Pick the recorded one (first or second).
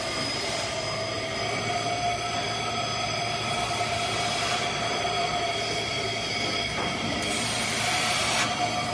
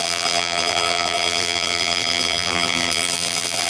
first